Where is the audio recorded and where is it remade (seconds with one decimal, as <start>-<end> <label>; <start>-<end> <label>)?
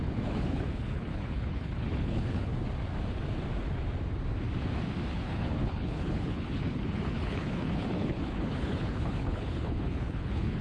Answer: 0.0-2.5 remade; 2.5-5.1 recorded; 5.1-10.6 remade